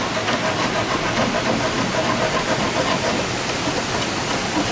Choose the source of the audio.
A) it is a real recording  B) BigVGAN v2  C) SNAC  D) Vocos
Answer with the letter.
A